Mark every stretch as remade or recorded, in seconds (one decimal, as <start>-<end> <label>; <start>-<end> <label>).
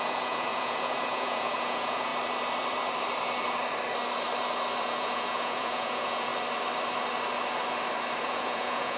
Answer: 0.0-2.1 remade; 2.1-4.8 recorded; 4.8-6.3 remade; 6.3-8.2 recorded; 8.2-9.0 remade